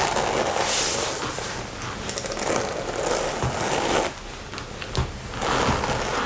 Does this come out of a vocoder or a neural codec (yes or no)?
no